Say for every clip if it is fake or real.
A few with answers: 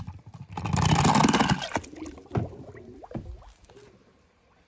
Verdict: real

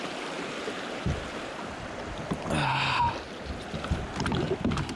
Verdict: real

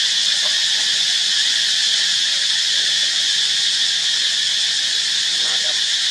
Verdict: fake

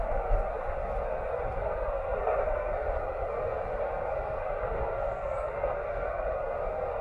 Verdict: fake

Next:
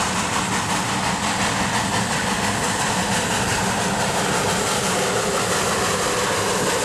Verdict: real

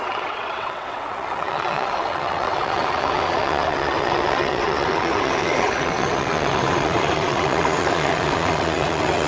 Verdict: fake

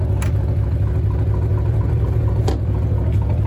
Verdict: real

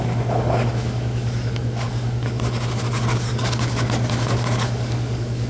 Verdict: fake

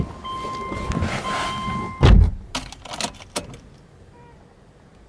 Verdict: real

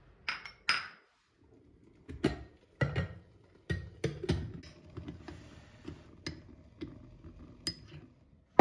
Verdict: real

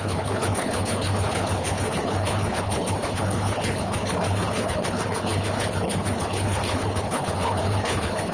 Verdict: fake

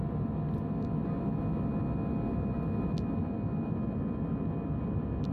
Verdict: real